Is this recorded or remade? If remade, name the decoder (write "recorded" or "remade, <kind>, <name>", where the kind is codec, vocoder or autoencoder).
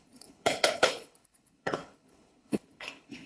remade, codec, HILCodec